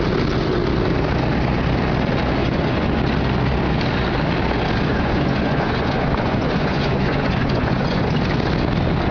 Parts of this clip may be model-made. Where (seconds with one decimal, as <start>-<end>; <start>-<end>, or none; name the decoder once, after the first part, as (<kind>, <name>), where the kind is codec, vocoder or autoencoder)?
2.4-3.0 (vocoder, Vocos); 4.9-8.1